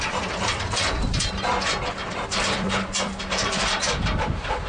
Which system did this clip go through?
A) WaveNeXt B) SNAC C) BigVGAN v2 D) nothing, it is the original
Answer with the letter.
C